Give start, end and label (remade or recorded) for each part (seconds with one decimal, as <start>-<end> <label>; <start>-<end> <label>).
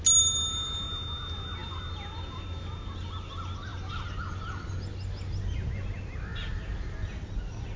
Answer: 0.0-7.8 recorded